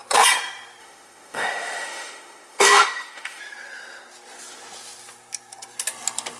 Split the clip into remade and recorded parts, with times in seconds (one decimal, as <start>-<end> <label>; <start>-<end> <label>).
0.0-0.8 recorded; 0.8-3.4 remade; 3.4-6.4 recorded